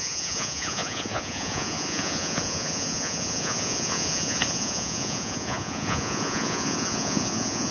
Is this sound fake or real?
fake